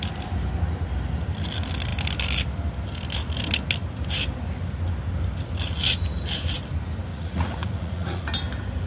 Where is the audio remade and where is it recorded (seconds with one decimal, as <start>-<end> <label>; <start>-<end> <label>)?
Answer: 0.0-7.1 recorded; 7.1-8.3 remade; 8.3-8.9 recorded